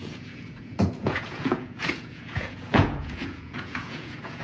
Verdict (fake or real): fake